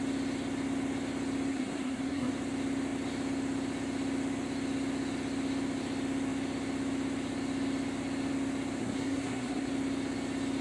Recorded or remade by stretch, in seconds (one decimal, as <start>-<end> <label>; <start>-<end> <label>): 0.0-1.5 recorded; 1.5-2.3 remade; 2.3-8.8 recorded; 8.8-9.7 remade; 9.7-10.6 recorded